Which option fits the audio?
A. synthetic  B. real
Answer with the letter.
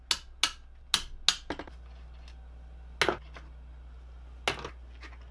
B